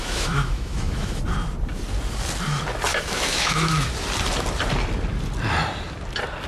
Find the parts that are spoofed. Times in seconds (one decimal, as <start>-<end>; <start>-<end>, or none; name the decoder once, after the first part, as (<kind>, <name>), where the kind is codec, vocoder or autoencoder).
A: 0.0-1.2 (autoencoder, DAC-VAE); 2.9-3.9